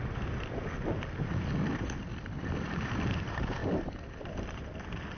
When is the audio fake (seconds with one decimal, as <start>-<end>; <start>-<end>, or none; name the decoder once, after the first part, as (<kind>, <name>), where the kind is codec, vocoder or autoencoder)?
2.1-3.2 (vocoder, BigVGAN v2); 3.6-4.2